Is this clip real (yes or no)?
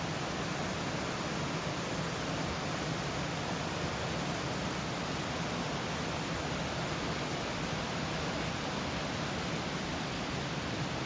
yes